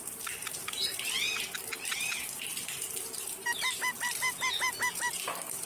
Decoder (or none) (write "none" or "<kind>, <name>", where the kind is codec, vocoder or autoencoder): none